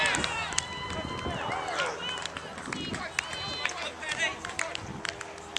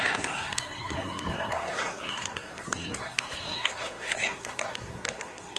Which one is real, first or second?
first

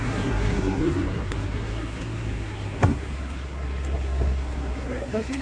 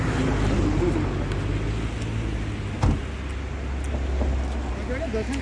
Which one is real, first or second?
second